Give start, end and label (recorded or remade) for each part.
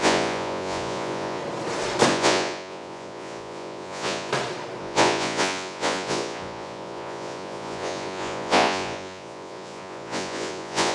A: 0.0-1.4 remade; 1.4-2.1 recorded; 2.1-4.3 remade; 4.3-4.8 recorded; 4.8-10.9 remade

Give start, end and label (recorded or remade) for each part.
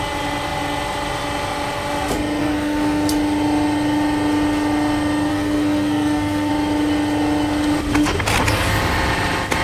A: 0.0-2.4 recorded; 2.4-3.1 remade; 3.1-5.3 recorded; 5.3-6.5 remade; 6.5-9.6 recorded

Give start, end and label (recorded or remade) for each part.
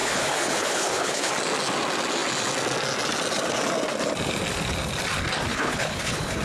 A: 0.0-1.3 remade; 1.3-5.5 recorded; 5.5-6.4 remade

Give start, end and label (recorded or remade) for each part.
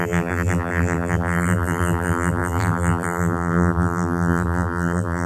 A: 0.0-5.3 remade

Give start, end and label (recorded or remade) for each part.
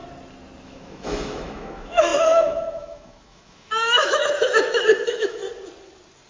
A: 0.0-0.6 recorded; 0.6-5.4 remade; 5.4-6.3 recorded